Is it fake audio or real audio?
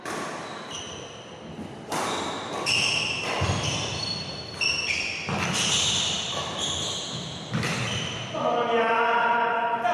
real